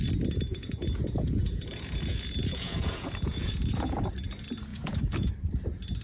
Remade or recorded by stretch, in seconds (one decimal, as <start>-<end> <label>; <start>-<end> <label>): 0.0-0.5 recorded; 0.5-4.1 remade; 4.1-4.7 recorded; 4.7-5.3 remade; 5.3-6.0 recorded